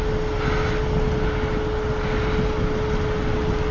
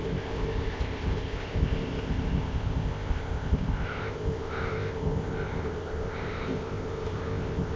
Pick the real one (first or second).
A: first